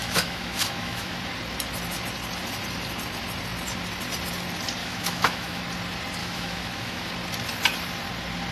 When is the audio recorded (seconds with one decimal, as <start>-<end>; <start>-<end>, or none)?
1.2-4.8; 5.6-6.2; 7.1-8.5

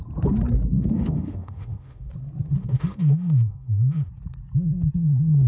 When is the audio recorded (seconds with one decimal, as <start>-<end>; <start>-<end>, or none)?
0.0-0.7; 2.1-2.6; 4.1-5.5